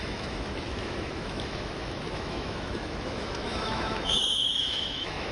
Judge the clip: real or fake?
fake